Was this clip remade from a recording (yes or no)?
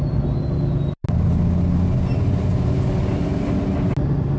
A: no